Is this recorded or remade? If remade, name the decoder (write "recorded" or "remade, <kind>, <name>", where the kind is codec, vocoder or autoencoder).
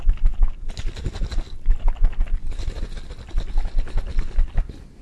recorded